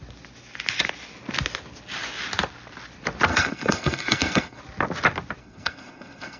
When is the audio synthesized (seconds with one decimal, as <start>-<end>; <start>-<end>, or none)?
3.3-4.6; 5.4-6.4